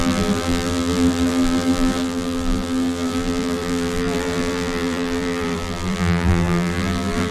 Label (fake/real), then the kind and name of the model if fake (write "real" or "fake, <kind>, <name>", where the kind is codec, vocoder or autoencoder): fake, vocoder, BigVGAN v2